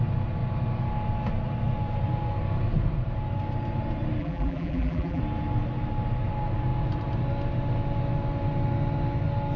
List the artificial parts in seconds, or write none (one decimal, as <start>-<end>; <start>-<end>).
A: 4.2-5.2